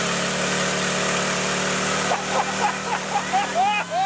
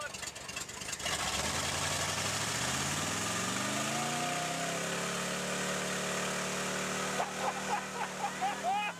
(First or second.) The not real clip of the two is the first